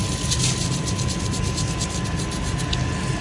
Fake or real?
real